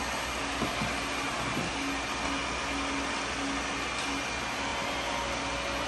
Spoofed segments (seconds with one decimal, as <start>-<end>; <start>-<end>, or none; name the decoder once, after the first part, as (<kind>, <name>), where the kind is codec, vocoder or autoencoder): none